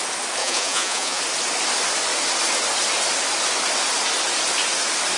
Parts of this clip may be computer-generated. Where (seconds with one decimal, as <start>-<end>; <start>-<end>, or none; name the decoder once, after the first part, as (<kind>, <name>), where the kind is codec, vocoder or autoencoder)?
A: 0.4-1.2 (vocoder, Vocos)

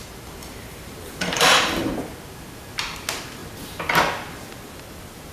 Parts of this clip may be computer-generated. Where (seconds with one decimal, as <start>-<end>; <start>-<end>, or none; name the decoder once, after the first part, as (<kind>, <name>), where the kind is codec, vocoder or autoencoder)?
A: 0.4-1.8 (vocoder, BigVGAN v2)

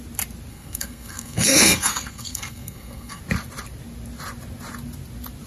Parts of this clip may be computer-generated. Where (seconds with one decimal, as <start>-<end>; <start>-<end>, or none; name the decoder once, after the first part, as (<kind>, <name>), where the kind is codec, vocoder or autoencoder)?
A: 0.5-3.2 (codec, SNAC)

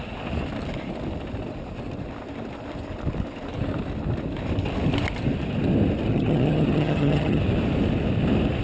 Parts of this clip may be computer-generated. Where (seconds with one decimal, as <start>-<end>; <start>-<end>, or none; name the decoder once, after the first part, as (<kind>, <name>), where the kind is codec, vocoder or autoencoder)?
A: 6.1-7.4 (vocoder, HiFi-GAN)

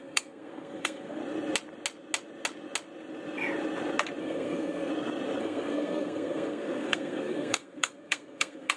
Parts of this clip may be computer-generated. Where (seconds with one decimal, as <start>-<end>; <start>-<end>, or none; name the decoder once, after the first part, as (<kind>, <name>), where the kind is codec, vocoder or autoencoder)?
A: 0.0-1.2 (codec, SNAC); 4.2-4.9; 5.4-8.8

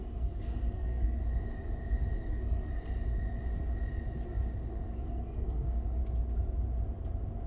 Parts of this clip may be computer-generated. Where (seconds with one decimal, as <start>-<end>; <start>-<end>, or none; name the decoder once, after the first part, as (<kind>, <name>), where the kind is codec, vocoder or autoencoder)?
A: 0.0-1.2 (codec, SNAC); 2.3-2.7; 4.9-6.0